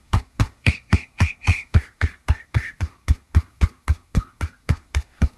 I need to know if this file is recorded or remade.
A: remade